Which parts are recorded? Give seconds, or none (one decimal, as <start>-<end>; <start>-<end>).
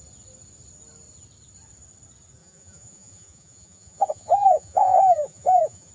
0.0-2.4